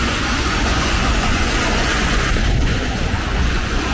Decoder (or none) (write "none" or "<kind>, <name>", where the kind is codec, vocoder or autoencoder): vocoder, Vocos